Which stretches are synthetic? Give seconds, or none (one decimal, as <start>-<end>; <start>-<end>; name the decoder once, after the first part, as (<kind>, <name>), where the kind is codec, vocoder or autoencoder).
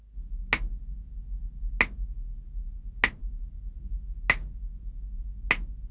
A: none